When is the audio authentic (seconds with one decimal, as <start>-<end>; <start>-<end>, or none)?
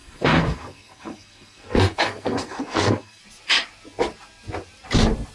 3.2-5.3